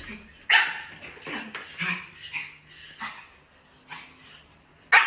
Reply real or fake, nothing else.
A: real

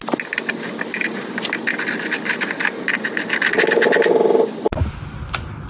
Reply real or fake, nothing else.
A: real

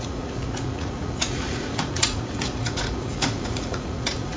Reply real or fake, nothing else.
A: fake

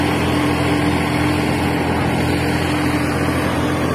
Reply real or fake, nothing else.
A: real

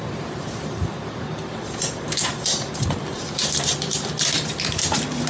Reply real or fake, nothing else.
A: fake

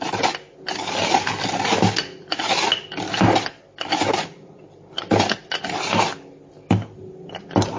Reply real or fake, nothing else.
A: real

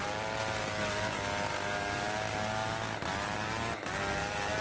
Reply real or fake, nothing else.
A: real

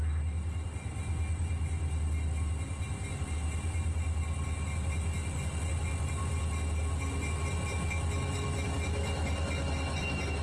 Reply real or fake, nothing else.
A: real